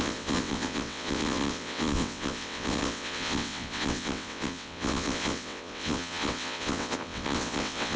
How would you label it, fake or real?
fake